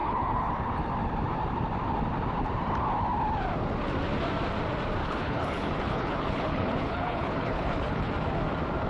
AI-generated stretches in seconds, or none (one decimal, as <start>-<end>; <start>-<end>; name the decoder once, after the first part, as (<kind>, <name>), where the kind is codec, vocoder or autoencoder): 0.0-0.5 (codec, HILCodec); 5.0-8.1